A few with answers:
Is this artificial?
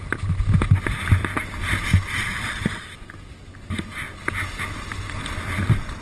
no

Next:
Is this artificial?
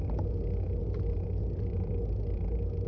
no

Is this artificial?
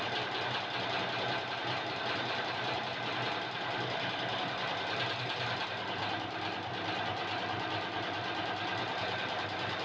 no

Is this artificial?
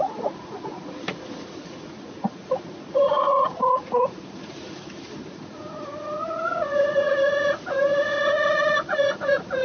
yes